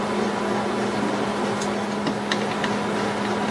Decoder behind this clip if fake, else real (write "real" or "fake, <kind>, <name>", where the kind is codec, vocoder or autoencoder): real